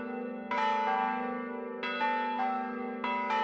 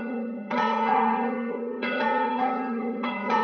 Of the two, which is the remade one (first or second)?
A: second